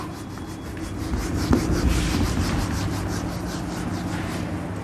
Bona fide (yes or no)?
yes